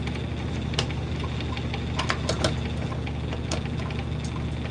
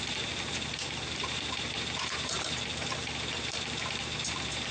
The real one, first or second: first